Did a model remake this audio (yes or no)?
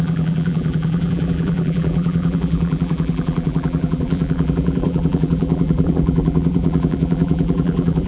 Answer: yes